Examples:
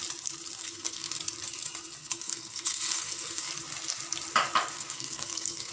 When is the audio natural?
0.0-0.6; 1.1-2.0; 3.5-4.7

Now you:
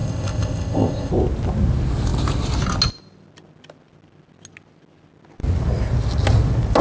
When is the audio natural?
1.1-6.8

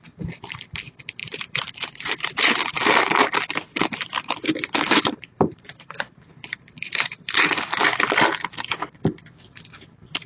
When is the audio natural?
0.0-1.2; 3.0-3.7; 8.0-10.3

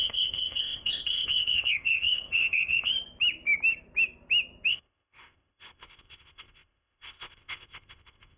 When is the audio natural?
2.9-4.7

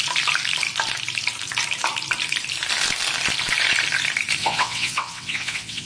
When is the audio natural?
0.0-4.4

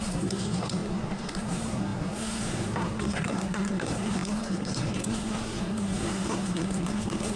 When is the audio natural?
none

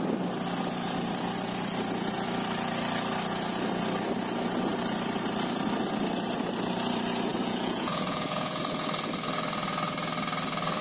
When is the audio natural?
0.0-7.3; 8.6-10.8

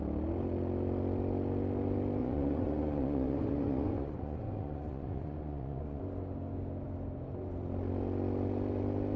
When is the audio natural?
0.0-2.2; 6.0-9.2